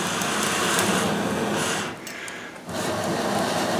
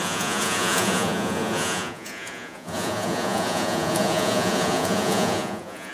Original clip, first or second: first